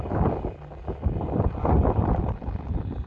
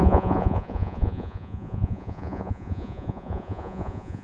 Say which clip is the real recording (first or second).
first